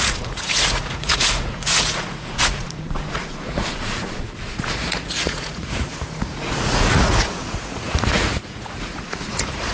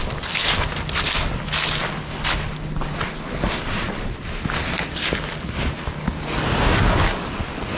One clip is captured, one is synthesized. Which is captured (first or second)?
second